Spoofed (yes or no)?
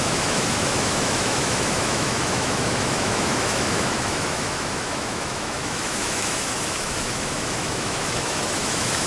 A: yes